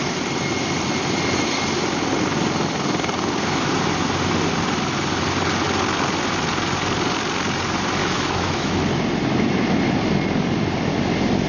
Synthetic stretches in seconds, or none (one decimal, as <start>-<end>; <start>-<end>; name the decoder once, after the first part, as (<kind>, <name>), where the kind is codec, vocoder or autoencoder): 8.0-8.8 (autoencoder, DAC-VAE)